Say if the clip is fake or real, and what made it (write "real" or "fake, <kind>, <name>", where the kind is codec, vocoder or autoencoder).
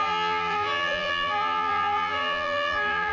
fake, vocoder, BigVGAN v2